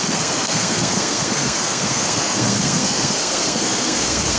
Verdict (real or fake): fake